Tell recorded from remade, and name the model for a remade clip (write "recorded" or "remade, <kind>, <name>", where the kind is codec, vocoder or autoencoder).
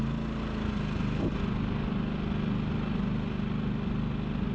recorded